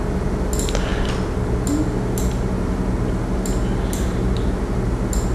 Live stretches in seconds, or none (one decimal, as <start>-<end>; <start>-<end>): 0.0-5.3